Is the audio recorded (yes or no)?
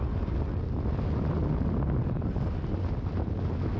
yes